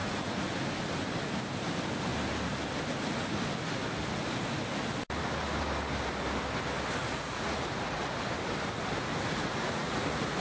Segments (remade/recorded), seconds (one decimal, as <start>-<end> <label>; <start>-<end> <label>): 0.0-0.5 remade; 0.5-7.0 recorded; 7.0-8.0 remade; 8.0-9.5 recorded; 9.5-10.4 remade